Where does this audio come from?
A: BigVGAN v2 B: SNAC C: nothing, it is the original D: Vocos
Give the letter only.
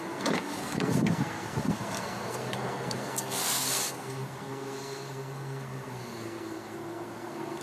B